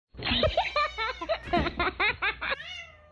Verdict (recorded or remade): recorded